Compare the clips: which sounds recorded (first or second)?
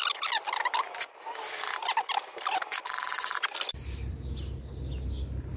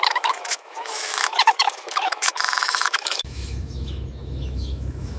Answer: first